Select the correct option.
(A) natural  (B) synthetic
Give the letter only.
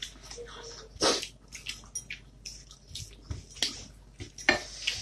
A